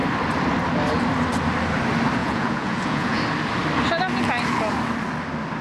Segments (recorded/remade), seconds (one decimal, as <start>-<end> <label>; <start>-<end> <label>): 0.0-2.2 recorded; 2.2-3.2 remade; 3.2-5.6 recorded